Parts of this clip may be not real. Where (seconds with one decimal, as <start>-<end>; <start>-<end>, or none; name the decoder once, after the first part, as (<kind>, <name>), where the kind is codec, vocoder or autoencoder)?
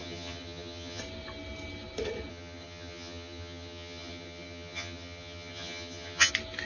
0.0-1.0 (vocoder, HiFi-GAN); 2.3-6.3